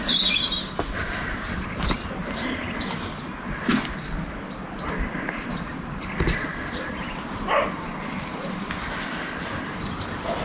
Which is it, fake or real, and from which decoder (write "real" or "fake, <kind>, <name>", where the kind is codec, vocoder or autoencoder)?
fake, vocoder, BigVGAN v2